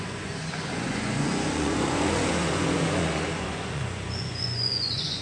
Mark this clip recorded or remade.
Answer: remade